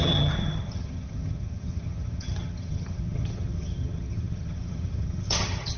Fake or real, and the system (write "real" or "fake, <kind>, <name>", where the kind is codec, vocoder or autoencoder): fake, vocoder, HiFi-GAN